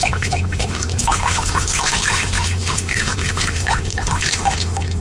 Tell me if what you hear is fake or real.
fake